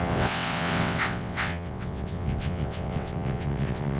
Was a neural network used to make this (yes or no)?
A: yes